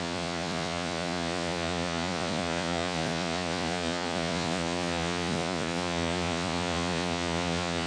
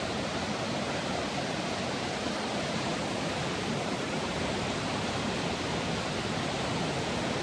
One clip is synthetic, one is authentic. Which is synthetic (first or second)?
first